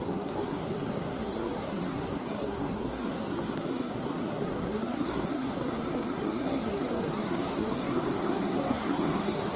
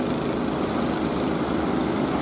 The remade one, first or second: first